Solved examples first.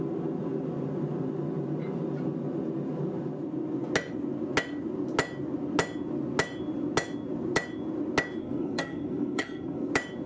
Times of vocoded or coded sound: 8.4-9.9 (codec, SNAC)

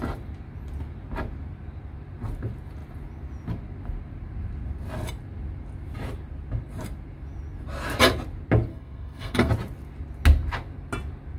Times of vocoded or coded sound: 8.7-9.5 (codec, SNAC)

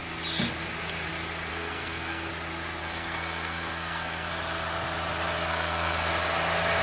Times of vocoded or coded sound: 1.5-2.3 (codec, SNAC); 2.8-4.3; 5.5-6.1